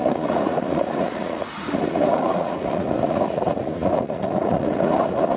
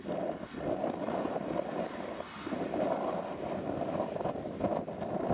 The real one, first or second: second